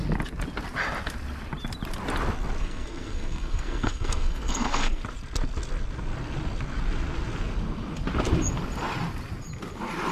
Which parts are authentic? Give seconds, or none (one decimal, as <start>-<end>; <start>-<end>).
0.0-2.6; 5.0-10.1